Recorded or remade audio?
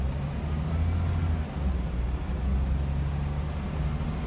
recorded